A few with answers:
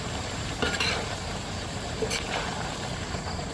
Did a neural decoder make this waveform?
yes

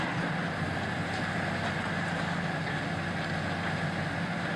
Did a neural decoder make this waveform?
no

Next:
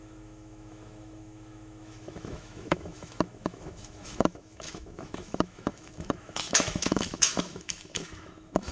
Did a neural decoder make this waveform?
yes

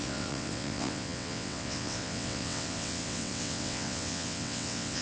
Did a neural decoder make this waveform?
yes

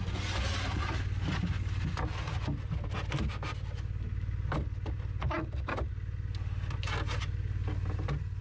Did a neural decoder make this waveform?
no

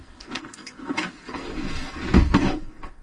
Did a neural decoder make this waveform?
yes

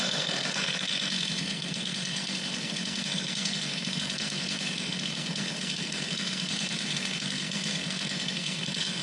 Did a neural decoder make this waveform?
yes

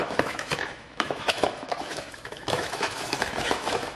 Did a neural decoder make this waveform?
yes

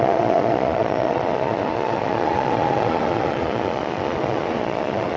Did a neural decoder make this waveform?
yes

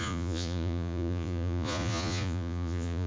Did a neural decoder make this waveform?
yes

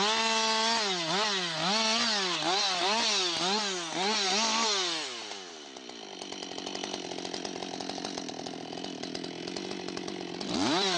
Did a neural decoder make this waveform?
no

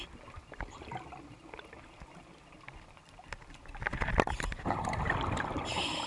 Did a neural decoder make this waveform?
no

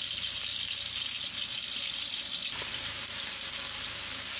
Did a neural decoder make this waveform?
no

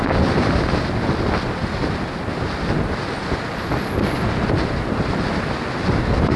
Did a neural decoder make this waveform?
no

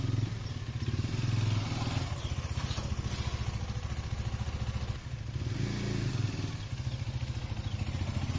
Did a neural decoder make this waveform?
no